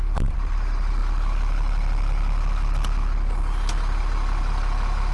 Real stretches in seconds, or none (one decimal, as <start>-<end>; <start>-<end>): 0.0-5.1